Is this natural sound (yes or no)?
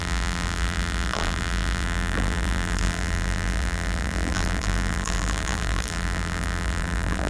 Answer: no